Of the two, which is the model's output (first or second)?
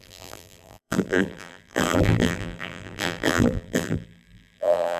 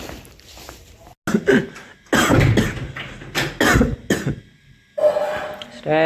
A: first